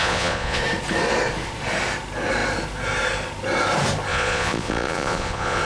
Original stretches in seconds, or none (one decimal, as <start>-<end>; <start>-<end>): 0.6-4.1